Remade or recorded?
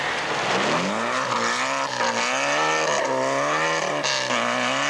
recorded